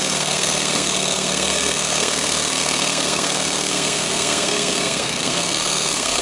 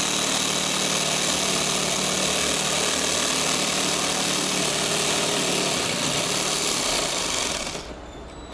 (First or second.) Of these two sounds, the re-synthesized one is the first